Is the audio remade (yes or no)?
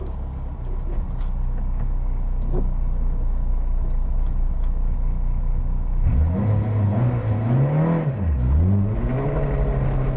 no